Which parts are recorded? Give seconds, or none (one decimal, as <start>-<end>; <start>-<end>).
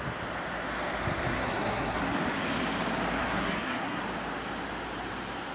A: 0.0-1.3; 2.0-3.2; 4.0-5.5